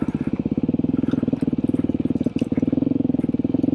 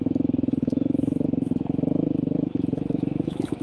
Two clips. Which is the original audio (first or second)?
first